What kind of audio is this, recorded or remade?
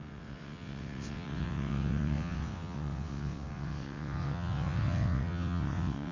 remade